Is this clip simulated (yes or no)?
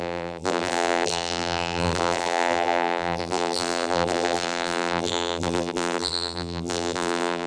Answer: yes